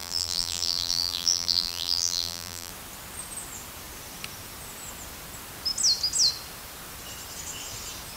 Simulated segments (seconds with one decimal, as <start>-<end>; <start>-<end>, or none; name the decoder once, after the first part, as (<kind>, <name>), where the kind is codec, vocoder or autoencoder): 0.0-2.7 (vocoder, BigVGAN v2)